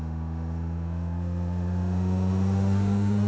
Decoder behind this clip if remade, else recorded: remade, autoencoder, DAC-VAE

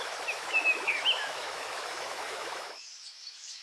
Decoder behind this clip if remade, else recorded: remade, autoencoder, DAC-VAE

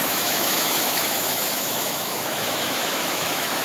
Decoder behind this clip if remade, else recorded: remade, autoencoder, DAC-VAE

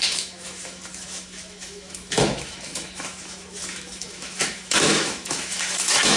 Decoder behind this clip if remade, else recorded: remade, autoencoder, DAC-VAE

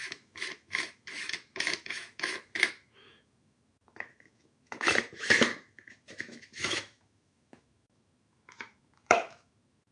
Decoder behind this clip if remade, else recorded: remade, autoencoder, DAC-VAE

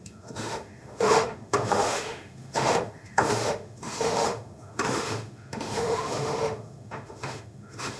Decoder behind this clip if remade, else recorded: remade, autoencoder, DAC-VAE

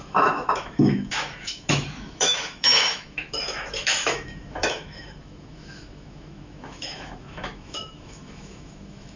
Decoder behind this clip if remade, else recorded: remade, autoencoder, DAC-VAE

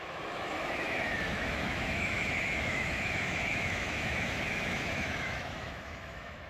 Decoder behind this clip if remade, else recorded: remade, autoencoder, DAC-VAE